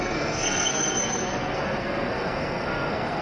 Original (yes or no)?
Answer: no